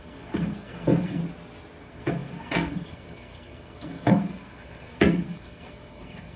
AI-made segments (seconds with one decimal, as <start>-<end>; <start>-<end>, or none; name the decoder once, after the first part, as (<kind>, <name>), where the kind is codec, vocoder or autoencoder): 0.0-1.2 (codec, SNAC); 1.8-6.4